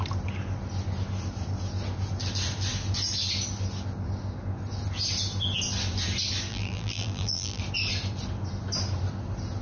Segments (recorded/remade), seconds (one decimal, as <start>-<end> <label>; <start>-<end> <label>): 0.0-6.5 recorded; 6.5-7.6 remade; 7.6-9.6 recorded